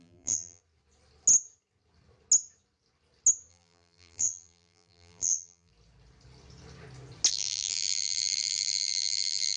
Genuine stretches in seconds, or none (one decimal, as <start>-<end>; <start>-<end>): 0.6-3.5; 5.7-7.3